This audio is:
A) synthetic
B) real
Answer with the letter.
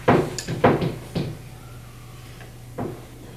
B